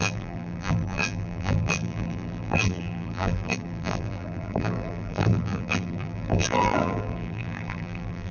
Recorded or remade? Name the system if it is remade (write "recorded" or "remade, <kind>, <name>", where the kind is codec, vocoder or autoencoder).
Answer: remade, vocoder, BigVGAN v2